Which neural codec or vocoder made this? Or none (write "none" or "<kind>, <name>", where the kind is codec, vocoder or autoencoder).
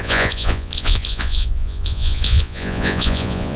vocoder, Vocos